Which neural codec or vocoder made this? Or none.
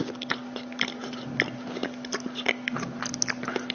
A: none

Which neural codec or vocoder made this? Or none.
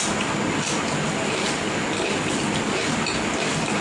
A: none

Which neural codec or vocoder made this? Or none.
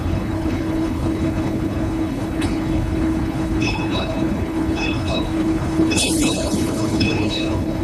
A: codec, HILCodec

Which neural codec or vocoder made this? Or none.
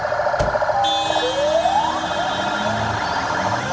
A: none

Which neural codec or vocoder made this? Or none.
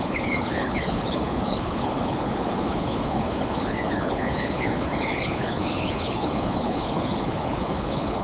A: codec, HILCodec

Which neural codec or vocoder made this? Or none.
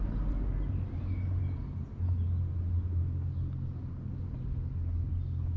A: none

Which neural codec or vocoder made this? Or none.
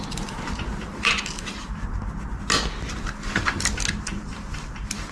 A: none